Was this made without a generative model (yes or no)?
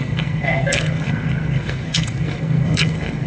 no